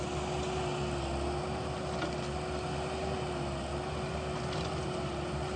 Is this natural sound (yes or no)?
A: yes